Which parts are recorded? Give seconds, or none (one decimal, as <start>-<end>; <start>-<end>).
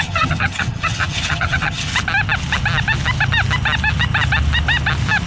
1.9-5.3